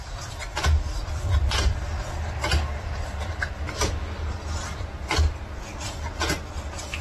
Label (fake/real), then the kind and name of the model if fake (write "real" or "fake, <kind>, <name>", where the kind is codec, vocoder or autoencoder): real